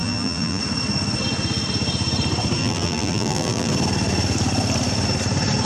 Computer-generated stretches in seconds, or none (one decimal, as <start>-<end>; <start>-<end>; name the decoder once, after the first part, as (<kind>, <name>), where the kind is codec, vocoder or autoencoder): 0.0-0.6 (vocoder, BigVGAN v2); 2.6-3.7